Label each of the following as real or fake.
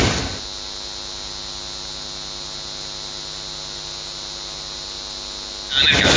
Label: real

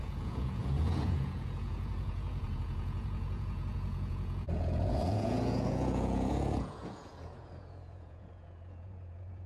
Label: fake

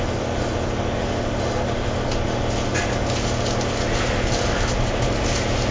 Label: real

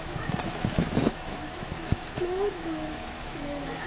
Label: fake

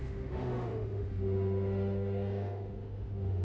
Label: fake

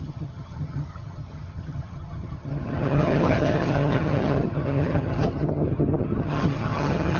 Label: fake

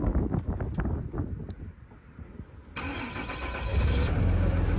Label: real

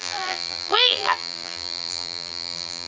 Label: fake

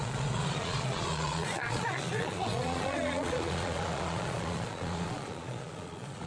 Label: fake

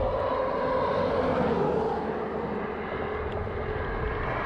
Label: real